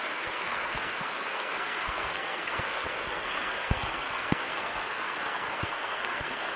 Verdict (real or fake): fake